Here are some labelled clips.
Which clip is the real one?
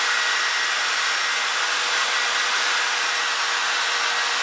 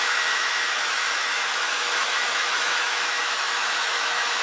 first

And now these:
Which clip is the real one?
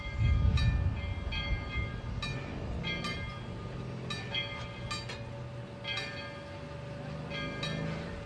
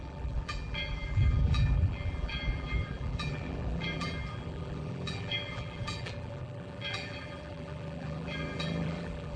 first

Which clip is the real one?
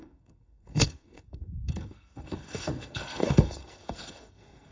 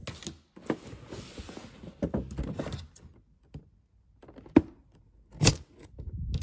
second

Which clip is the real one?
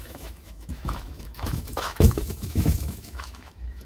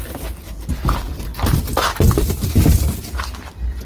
second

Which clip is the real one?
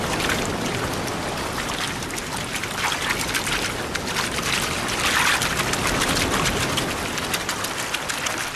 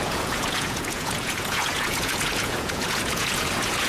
first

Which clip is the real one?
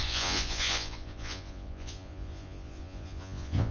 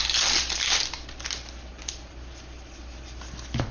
second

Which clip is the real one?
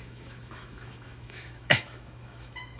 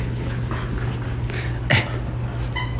second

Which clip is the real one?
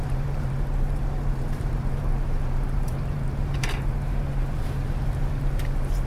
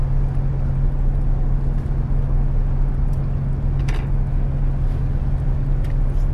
second